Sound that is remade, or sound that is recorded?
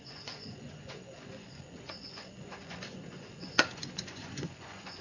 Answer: remade